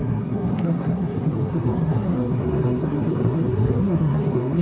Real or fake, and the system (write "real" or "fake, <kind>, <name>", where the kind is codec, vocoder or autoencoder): fake, codec, SNAC